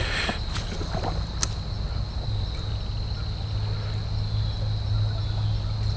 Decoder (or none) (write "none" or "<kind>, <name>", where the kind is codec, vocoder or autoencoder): none